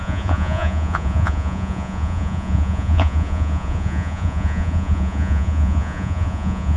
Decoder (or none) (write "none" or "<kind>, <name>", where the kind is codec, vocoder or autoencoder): vocoder, Vocos